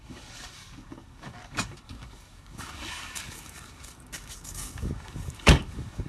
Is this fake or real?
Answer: fake